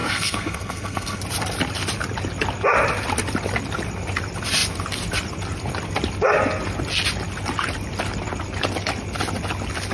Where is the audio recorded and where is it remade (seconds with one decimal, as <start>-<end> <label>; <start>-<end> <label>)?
0.0-1.2 remade; 1.2-9.9 recorded